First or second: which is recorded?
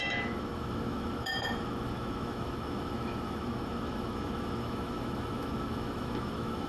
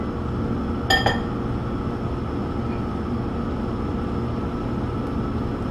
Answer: second